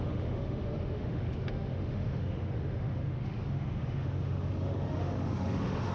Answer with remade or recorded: remade